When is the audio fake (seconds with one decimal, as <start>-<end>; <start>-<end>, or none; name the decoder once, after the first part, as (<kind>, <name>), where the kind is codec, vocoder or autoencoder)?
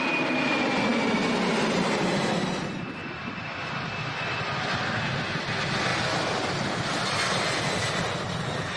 none